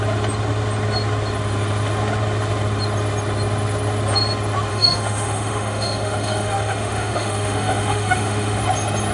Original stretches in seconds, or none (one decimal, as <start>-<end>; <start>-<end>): 0.0-4.7; 8.6-9.1